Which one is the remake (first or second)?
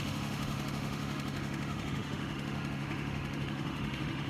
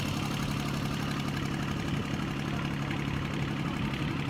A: first